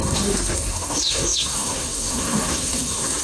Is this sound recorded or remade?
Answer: remade